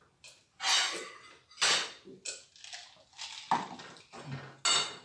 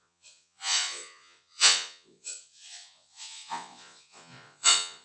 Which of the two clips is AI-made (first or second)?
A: second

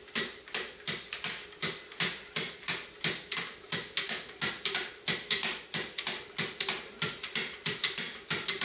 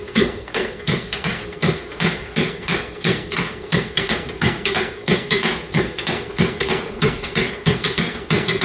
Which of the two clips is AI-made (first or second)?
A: second